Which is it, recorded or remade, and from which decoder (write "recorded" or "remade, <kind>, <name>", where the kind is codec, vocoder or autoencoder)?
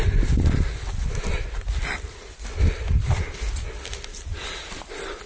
recorded